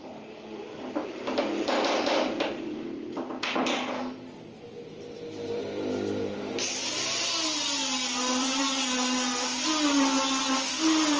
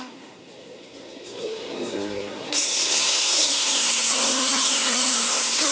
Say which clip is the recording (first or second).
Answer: first